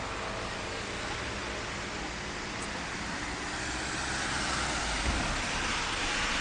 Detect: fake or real real